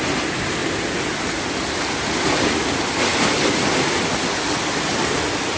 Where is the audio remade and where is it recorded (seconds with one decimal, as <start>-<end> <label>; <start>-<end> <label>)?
0.0-5.6 recorded